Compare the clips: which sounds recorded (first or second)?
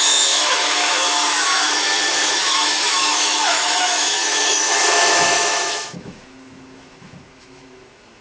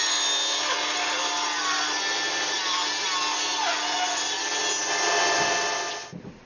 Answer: second